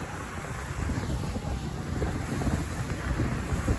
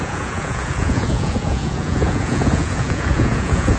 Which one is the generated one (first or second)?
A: second